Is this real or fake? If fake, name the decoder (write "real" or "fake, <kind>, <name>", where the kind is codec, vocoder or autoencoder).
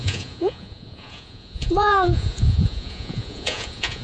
fake, vocoder, Vocos